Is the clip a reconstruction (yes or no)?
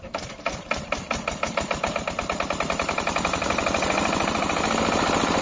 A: no